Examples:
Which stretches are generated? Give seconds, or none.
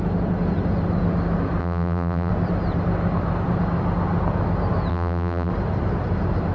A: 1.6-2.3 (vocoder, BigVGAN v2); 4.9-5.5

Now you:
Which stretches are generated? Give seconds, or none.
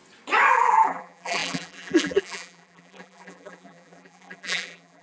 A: 0.5-5.0 (vocoder, BigVGAN v2)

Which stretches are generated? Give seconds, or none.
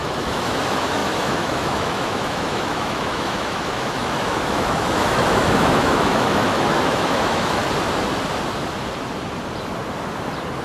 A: 0.0-7.6 (autoencoder, DAC-VAE)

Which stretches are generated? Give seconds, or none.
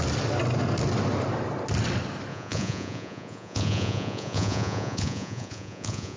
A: 2.3-6.2 (vocoder, Vocos)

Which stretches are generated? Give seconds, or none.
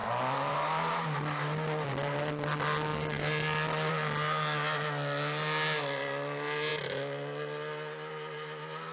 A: none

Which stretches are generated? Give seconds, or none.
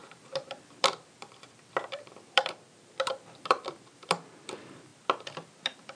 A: 0.0-6.0 (vocoder, BigVGAN v2)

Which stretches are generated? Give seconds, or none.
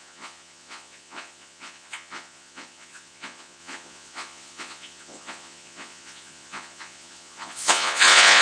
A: 0.0-8.4 (vocoder, Vocos)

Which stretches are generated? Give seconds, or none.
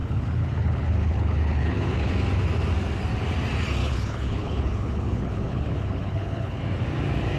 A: 0.0-2.1 (codec, HILCodec); 3.8-6.6